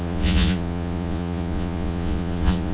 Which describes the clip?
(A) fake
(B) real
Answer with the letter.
A